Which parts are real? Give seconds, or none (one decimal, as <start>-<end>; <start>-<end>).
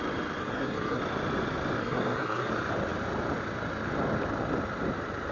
0.0-0.4; 1.0-1.8; 2.5-5.3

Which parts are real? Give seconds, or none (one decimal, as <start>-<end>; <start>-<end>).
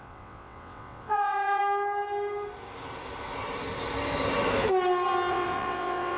1.6-5.3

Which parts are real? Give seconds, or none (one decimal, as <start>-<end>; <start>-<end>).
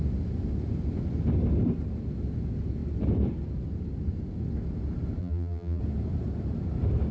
0.0-5.2; 5.8-7.1